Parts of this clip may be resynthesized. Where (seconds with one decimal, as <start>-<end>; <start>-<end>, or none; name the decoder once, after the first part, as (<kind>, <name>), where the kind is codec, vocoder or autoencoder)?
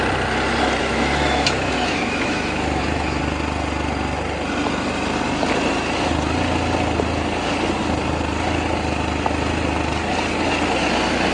0.8-3.2 (autoencoder, DAC-VAE)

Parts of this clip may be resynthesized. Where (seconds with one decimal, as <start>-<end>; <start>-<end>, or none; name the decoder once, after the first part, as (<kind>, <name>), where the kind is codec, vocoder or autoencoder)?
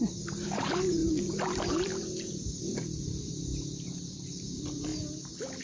0.0-4.9 (vocoder, BigVGAN v2)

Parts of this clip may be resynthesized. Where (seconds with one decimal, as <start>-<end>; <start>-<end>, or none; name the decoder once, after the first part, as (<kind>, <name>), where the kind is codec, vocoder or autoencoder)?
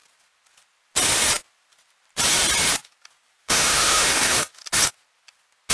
3.4-4.6 (autoencoder, DAC-VAE)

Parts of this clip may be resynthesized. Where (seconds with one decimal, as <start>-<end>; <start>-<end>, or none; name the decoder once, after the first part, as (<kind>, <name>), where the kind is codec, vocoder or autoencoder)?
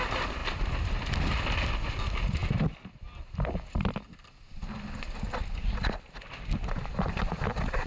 none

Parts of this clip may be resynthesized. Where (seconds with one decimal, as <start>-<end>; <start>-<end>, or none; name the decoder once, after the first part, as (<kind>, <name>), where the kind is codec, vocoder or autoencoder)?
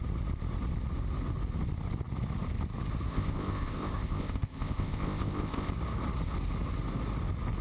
3.1-5.7 (codec, ZipCodec)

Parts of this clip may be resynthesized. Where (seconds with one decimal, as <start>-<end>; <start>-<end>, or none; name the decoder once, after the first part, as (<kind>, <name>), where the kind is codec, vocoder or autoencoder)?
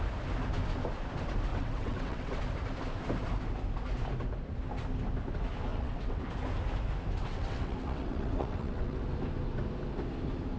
1.5-2.4 (vocoder, WaveNeXt); 5.7-6.2; 7.2-9.0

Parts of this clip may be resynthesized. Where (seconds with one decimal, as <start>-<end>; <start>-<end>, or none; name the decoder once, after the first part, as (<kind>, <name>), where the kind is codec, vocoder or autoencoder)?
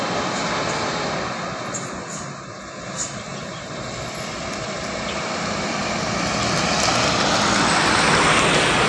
none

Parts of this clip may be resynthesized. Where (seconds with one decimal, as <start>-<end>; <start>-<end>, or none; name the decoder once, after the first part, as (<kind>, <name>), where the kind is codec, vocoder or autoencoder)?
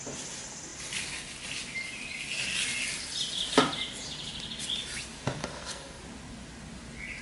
5.4-6.0 (codec, SNAC)